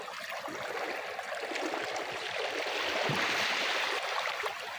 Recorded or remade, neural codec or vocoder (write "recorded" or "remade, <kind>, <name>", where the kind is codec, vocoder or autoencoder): recorded